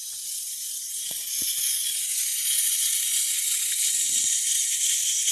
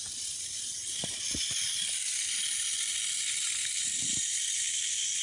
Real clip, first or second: second